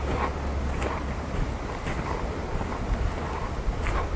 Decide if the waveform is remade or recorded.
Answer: recorded